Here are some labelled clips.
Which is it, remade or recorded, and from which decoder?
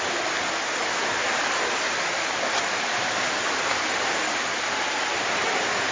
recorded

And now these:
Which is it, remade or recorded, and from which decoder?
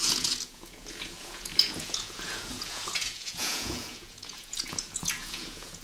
remade, vocoder, Vocos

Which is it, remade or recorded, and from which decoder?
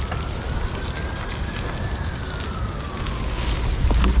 recorded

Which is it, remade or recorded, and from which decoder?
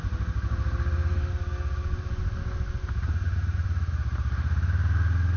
recorded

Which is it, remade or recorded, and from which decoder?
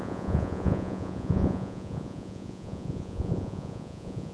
remade, vocoder, Vocos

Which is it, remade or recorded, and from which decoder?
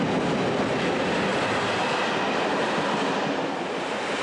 recorded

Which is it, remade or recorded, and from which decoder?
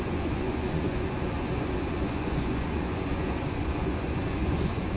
remade, vocoder, Vocos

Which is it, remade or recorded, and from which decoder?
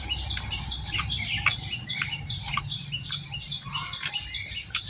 remade, vocoder, BigVGAN v2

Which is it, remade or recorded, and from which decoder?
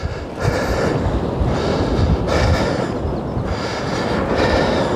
recorded